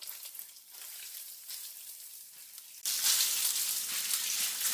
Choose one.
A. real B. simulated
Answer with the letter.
A